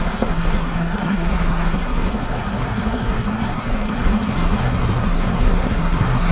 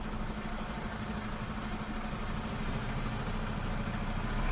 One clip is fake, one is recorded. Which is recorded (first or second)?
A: second